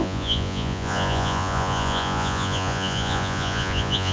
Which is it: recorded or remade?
remade